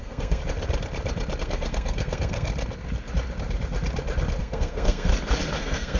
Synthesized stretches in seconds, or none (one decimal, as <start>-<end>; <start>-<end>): 0.0-0.4; 1.4-2.5; 4.4-5.1; 5.6-6.0